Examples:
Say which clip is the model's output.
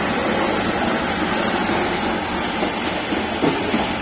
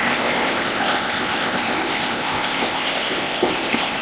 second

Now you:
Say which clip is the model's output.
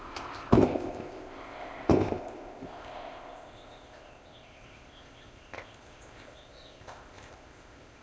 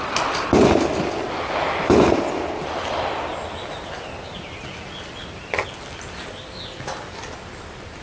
first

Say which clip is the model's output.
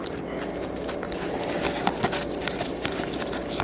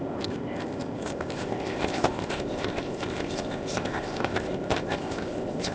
second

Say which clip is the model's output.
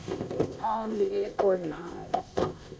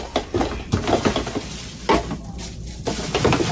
first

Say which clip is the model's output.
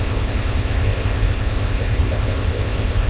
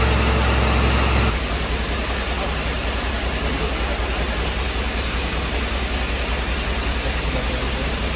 first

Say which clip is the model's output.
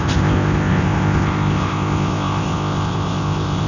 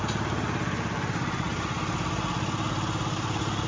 first